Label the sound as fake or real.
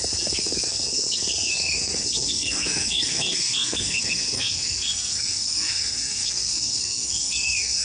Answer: fake